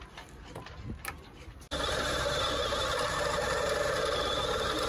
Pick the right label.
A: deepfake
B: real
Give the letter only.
B